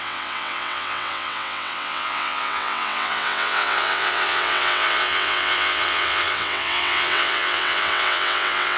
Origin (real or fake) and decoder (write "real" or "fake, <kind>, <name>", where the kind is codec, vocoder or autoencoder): fake, vocoder, WaveNeXt